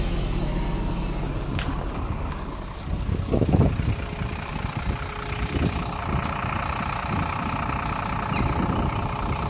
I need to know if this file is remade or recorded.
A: recorded